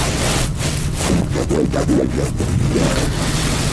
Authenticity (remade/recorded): remade